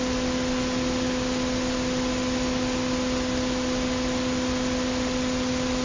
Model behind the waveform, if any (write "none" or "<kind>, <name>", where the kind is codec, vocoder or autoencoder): none